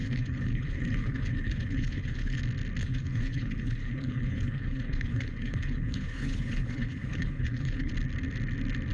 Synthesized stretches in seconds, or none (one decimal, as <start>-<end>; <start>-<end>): 0.0-2.4; 2.8-7.9